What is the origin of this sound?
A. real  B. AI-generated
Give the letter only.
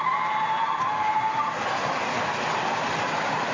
A